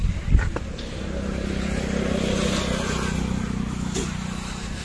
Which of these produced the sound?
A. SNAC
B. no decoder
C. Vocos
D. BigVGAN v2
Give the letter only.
B